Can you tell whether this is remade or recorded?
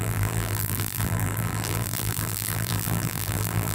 remade